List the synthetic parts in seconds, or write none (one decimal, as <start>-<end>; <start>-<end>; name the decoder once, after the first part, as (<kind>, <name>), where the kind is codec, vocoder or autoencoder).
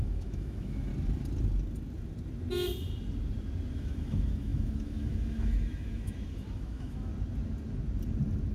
0.0-0.9 (autoencoder, DAC-VAE); 3.7-7.1